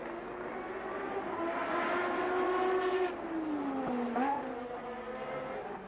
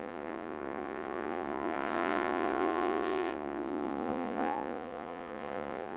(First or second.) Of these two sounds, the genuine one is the first